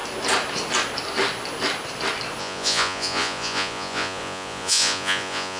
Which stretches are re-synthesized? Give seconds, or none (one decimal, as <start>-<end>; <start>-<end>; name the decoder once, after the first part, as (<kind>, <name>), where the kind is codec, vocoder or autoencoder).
2.4-5.6 (vocoder, Vocos)